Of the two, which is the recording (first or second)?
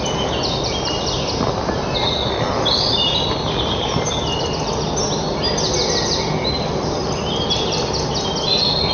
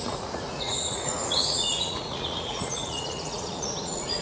first